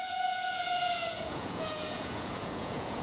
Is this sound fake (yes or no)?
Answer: yes